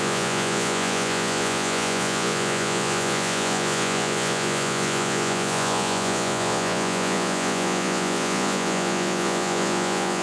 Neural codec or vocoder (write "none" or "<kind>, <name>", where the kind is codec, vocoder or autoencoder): vocoder, Vocos